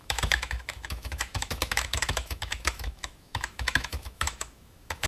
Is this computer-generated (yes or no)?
yes